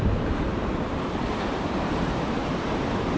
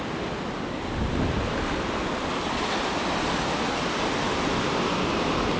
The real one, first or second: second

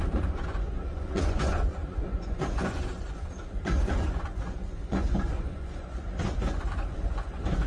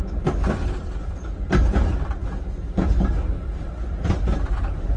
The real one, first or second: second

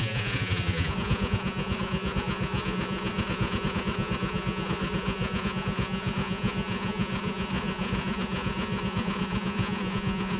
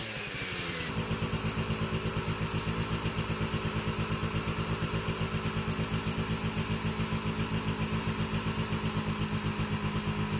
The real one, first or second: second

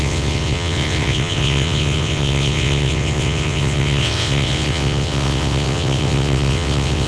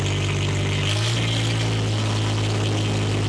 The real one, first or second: second